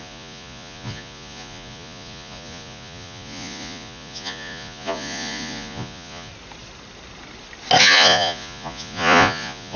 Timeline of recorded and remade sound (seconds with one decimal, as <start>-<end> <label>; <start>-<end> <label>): 0.0-6.3 remade; 6.3-7.8 recorded; 7.8-9.8 remade